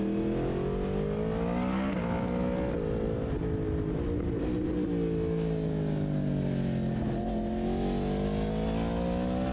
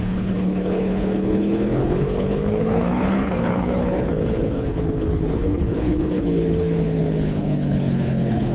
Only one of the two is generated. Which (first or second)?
second